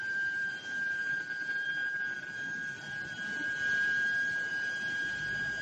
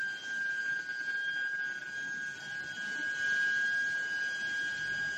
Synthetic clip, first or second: first